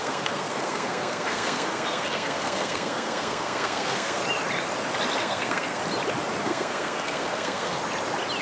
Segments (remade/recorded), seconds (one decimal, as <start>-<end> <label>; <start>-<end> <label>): 0.0-4.2 remade; 4.2-5.2 recorded; 5.2-5.8 remade; 5.8-6.4 recorded; 6.4-7.8 remade; 7.8-8.4 recorded